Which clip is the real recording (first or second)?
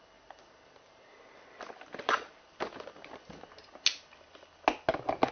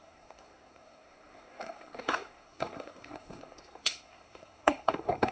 first